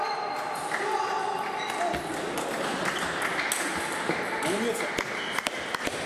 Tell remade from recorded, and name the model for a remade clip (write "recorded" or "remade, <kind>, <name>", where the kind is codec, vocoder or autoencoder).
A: recorded